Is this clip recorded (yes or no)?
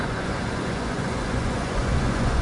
no